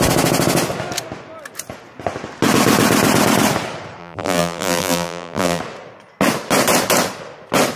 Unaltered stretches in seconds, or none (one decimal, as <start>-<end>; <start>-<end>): 0.0-4.0; 5.6-7.8